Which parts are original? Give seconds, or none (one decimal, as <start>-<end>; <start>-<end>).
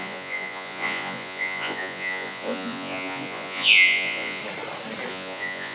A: 4.4-5.1